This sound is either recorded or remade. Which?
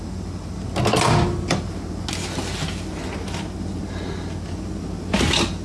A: recorded